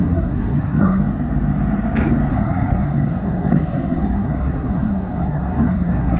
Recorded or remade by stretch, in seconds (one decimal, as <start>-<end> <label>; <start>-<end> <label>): 0.0-1.0 remade; 1.0-2.3 recorded; 2.3-6.2 remade